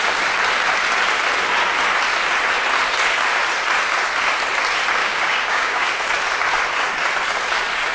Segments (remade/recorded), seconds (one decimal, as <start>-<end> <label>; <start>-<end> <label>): 0.0-5.0 recorded; 5.0-5.9 remade; 5.9-7.9 recorded